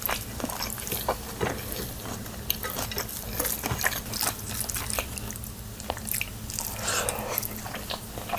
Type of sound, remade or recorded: recorded